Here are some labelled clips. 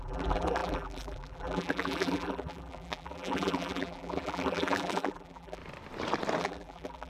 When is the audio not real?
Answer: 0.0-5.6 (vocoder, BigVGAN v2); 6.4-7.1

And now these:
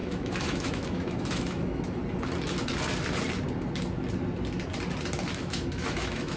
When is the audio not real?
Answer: 0.0-2.0 (autoencoder, DAC-VAE); 5.4-6.4